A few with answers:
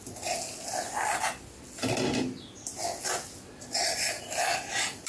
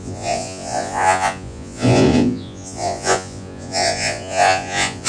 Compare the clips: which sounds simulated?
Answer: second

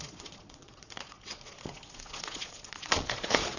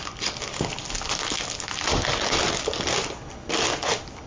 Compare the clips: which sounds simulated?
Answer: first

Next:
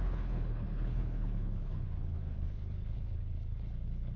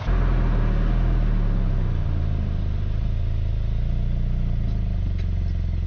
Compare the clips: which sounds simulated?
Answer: first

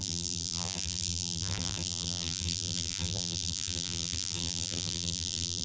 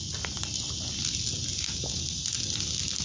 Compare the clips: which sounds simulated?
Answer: first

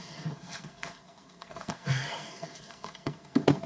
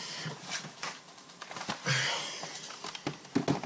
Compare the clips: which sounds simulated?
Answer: first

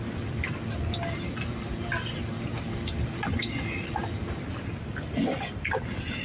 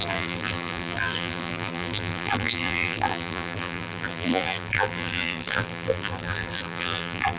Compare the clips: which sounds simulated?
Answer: second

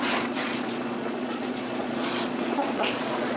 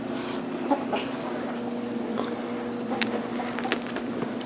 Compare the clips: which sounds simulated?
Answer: first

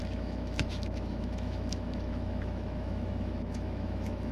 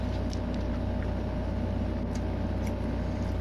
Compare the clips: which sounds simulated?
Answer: first